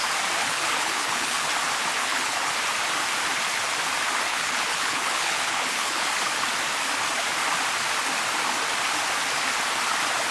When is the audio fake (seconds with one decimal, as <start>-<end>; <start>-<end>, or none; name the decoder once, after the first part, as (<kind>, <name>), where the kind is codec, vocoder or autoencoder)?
0.4-1.5 (codec, HILCodec); 2.0-2.5; 4.3-6.1